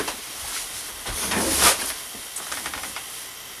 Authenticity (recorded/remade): recorded